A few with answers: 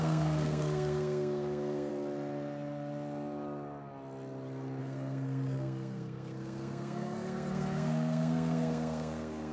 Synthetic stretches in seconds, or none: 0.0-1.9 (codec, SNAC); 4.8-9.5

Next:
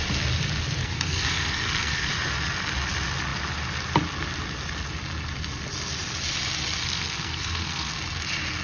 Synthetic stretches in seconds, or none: 0.8-2.1 (codec, SNAC); 6.8-7.9

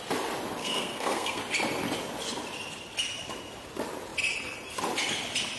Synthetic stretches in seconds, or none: 0.6-1.4 (codec, SNAC)

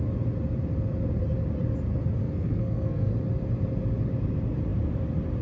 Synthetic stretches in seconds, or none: 2.2-3.1 (codec, SNAC)

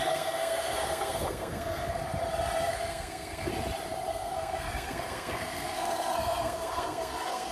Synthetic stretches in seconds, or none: 0.0-2.0 (codec, SNAC); 2.6-3.5; 4.1-7.5

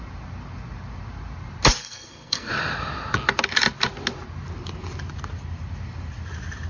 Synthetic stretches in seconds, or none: 1.8-2.5 (codec, SNAC)